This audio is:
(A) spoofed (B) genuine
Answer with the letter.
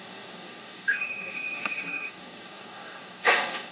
A